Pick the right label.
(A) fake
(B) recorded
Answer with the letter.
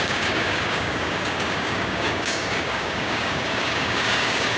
A